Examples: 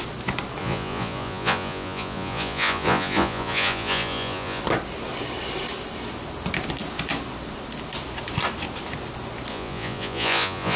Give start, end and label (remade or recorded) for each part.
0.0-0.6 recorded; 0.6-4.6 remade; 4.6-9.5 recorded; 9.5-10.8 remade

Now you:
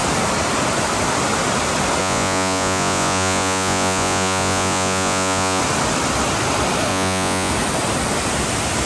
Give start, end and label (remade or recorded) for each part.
0.0-2.0 recorded; 2.0-5.6 remade; 5.6-6.9 recorded; 6.9-7.5 remade; 7.5-8.9 recorded

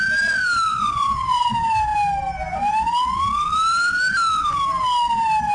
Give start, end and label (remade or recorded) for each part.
0.0-0.7 recorded; 0.7-1.5 remade; 1.5-5.5 recorded

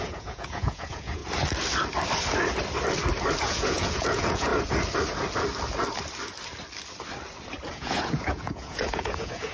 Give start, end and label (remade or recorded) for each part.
0.0-1.2 remade; 1.2-3.4 recorded; 3.4-4.5 remade; 4.5-7.7 recorded; 7.7-9.5 remade

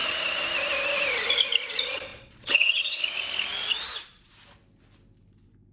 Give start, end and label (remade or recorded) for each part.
0.0-2.1 recorded; 2.1-3.0 remade; 3.0-3.6 recorded; 3.6-4.3 remade; 4.3-5.7 recorded